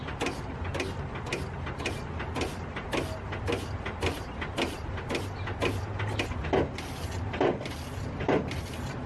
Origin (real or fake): real